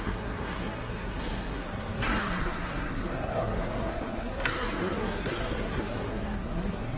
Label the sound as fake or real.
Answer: fake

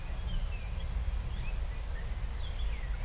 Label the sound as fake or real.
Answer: real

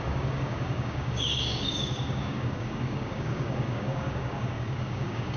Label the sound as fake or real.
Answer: fake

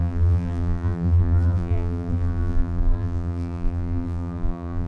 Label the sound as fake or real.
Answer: fake